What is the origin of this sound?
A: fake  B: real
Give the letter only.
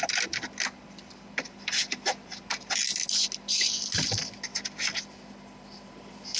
B